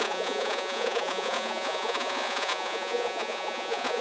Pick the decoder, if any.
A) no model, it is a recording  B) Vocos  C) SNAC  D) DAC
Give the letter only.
B